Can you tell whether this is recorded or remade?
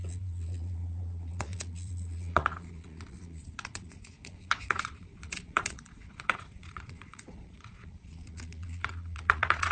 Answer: remade